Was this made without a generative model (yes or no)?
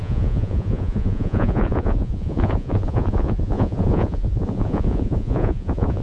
no